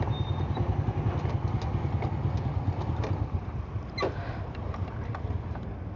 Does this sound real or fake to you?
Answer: real